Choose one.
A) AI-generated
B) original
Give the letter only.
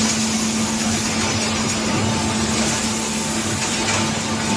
B